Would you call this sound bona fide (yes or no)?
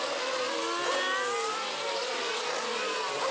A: yes